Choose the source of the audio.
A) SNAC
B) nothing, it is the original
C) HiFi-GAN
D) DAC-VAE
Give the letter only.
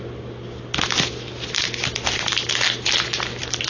B